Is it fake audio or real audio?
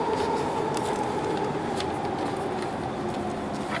real